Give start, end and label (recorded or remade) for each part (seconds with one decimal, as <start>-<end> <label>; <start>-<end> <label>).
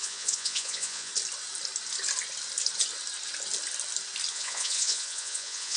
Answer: 0.0-1.1 remade; 1.1-4.3 recorded; 4.3-5.8 remade